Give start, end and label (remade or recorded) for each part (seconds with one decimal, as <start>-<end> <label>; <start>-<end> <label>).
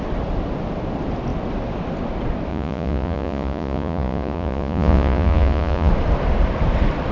0.0-2.5 recorded; 2.5-5.9 remade; 5.9-7.1 recorded